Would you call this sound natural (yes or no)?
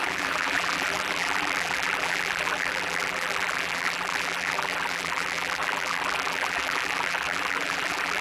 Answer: no